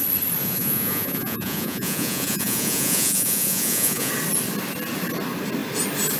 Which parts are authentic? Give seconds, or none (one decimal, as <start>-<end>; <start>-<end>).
0.0-0.4; 4.1-6.2